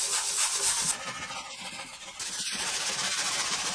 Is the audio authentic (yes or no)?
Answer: yes